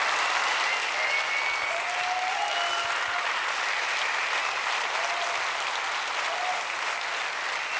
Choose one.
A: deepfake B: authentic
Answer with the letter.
B